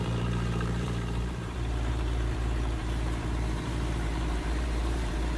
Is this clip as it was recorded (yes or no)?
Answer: no